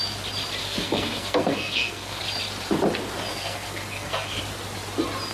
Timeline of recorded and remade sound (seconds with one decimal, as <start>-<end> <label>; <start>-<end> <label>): 0.0-0.6 recorded; 0.6-2.2 remade; 2.2-3.3 recorded; 3.3-4.4 remade; 4.4-5.3 recorded

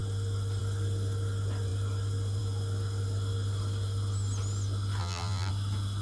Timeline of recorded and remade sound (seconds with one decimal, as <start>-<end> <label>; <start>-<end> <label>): 0.0-5.0 recorded; 5.0-5.5 remade; 5.5-6.0 recorded

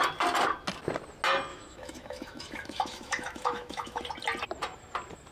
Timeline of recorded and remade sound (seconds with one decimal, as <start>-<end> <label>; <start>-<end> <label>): 0.0-1.5 recorded; 1.5-4.0 remade; 4.0-5.3 recorded

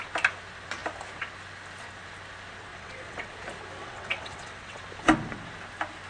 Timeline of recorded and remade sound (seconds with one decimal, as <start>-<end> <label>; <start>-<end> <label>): 0.0-2.7 recorded; 2.7-3.3 remade; 3.3-3.8 recorded; 3.8-4.8 remade; 4.8-6.1 recorded